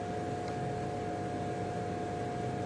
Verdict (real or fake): real